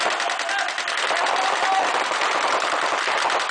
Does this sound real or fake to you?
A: real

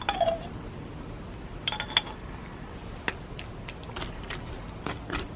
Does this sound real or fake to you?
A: real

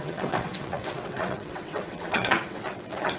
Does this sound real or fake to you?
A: fake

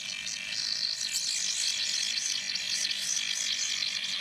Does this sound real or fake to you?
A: real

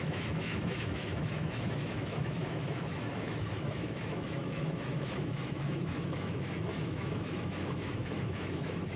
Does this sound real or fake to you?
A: fake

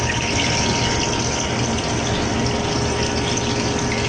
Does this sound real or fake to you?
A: real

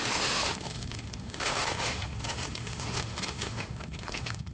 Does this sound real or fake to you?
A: fake